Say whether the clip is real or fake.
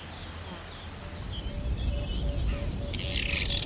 real